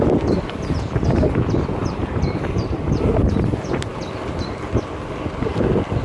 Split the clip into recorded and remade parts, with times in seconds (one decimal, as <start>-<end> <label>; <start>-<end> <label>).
0.0-1.8 recorded; 1.8-3.1 remade; 3.1-6.0 recorded